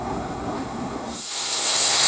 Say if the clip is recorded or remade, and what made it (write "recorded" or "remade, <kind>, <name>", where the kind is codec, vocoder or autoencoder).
remade, codec, SNAC